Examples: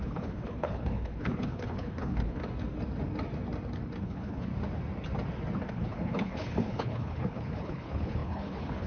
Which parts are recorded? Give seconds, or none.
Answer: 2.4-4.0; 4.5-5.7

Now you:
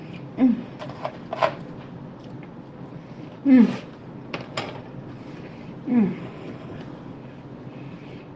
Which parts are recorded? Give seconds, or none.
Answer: 0.0-6.2; 6.8-8.4

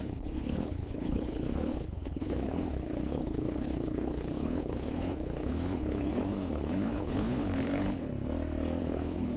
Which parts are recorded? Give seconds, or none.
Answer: 8.1-8.8